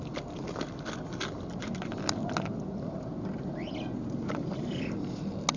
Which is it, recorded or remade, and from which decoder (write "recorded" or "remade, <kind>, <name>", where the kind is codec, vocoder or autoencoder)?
recorded